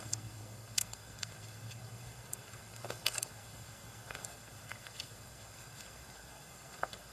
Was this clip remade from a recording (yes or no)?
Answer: yes